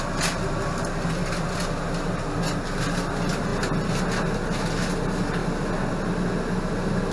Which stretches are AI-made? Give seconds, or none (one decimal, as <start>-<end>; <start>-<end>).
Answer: none